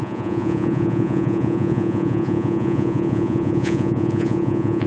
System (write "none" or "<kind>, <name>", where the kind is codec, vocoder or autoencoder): vocoder, Vocos